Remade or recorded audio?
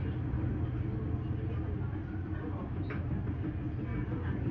recorded